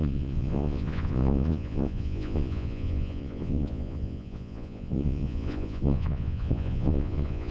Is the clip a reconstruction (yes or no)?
yes